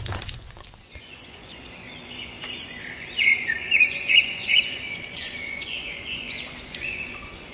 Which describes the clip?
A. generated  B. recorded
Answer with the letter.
A